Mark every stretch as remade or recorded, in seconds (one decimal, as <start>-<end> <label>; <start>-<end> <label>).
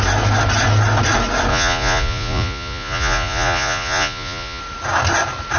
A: 0.0-1.5 recorded; 1.5-4.6 remade; 4.6-5.6 recorded